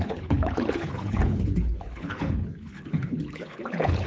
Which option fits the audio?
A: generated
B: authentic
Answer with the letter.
A